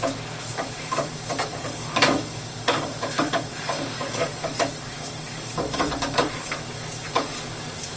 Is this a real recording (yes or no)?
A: no